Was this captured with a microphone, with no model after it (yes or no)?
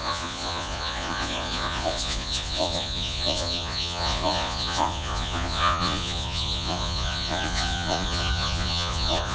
no